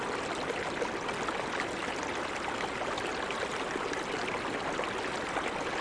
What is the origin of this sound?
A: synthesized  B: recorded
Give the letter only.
B